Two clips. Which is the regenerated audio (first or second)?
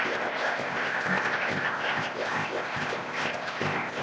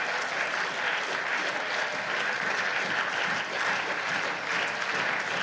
first